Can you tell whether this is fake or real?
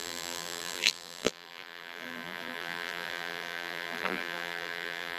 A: fake